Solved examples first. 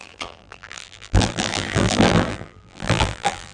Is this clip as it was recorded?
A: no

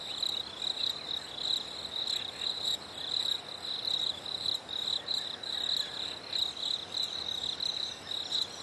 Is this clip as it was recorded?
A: yes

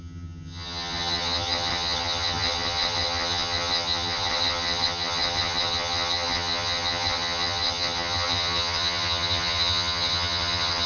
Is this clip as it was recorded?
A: no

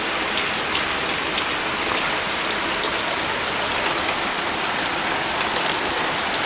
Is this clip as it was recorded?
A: yes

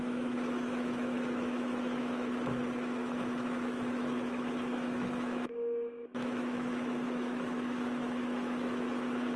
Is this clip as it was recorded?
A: no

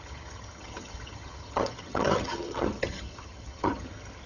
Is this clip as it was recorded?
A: no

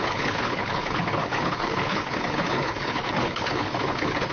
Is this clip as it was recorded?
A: no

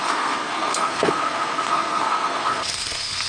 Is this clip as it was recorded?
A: no